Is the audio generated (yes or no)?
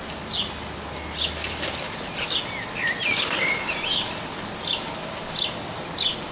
no